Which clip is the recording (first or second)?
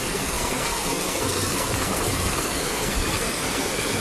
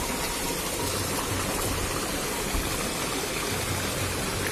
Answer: second